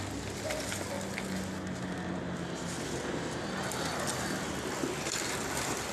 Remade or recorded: recorded